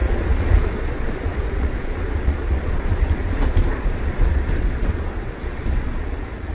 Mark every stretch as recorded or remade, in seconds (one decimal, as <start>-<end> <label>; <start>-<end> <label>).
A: 0.0-6.5 remade